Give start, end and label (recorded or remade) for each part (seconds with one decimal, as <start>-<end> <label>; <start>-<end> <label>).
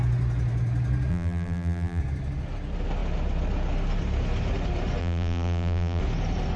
0.0-1.1 recorded; 1.1-2.0 remade; 2.0-5.0 recorded; 5.0-6.0 remade; 6.0-6.6 recorded